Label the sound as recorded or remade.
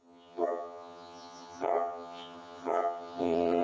remade